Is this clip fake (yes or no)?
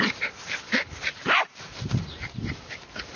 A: yes